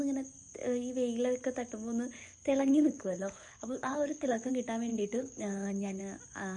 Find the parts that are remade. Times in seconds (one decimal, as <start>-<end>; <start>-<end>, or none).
2.2-4.5; 4.9-6.0